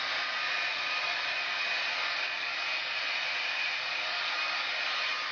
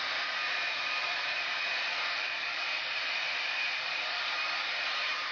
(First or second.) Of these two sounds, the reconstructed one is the second